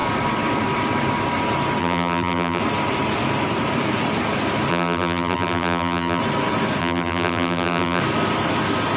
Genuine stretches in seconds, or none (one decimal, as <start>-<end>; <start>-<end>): 0.0-1.8; 2.6-4.7; 6.2-6.8; 8.0-9.0

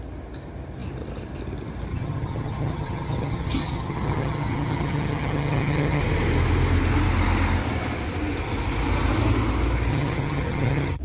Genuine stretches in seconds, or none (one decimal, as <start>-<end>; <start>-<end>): 0.0-1.9; 6.0-9.9

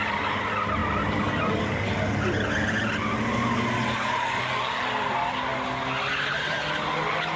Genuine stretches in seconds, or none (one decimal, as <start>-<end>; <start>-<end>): 0.0-7.4

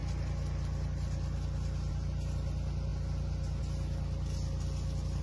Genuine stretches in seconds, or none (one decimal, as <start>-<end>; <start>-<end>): 0.0-5.2